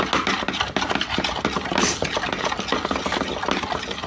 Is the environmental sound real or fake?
real